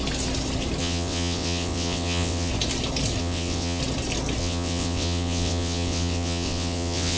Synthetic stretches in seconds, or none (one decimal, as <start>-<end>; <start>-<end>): 0.8-2.5; 3.2-3.8; 4.4-7.2